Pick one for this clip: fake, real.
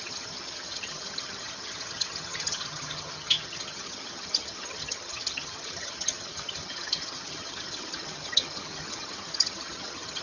fake